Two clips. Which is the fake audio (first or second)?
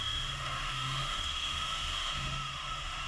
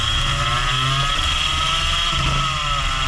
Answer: first